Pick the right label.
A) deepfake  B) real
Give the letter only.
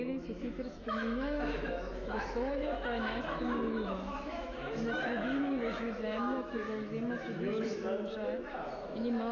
A